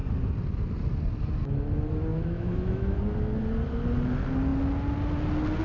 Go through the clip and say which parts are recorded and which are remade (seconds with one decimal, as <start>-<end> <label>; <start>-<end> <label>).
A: 0.0-2.1 recorded; 2.1-3.0 remade; 3.0-5.6 recorded

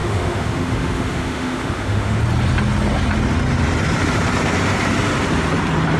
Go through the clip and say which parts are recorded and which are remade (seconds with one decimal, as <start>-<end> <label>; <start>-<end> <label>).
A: 0.0-2.2 remade; 2.2-6.0 recorded

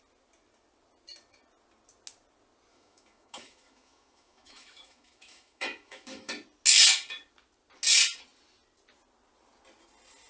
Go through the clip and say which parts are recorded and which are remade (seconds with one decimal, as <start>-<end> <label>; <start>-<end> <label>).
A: 0.0-2.7 recorded; 2.7-6.3 remade; 6.3-10.3 recorded

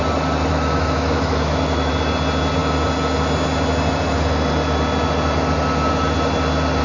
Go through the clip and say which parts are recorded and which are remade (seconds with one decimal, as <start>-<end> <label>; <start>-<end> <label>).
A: 0.0-0.5 recorded; 0.5-1.9 remade; 1.9-6.8 recorded

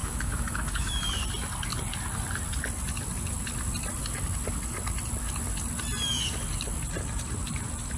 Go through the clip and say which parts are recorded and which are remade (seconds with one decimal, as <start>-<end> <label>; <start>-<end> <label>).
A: 0.0-1.1 remade; 1.1-8.0 recorded

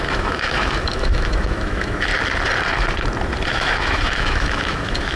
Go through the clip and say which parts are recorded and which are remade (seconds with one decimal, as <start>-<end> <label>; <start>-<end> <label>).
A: 0.0-2.1 remade; 2.1-3.5 recorded; 3.5-5.2 remade

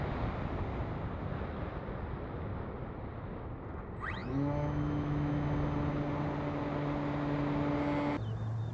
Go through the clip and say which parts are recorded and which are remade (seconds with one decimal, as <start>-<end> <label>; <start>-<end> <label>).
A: 0.0-4.2 recorded; 4.2-5.3 remade; 5.3-8.7 recorded